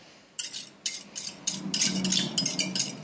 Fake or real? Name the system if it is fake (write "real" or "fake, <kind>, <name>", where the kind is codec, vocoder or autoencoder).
real